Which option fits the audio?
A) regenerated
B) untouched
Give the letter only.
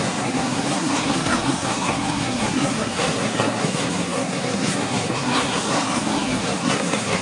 A